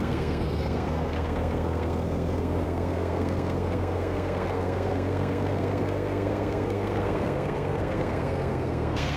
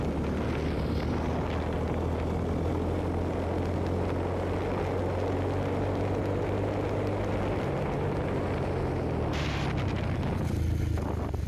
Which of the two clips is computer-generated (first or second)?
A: first